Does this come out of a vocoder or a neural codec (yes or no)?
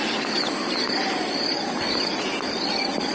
no